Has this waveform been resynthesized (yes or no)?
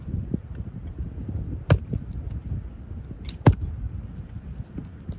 no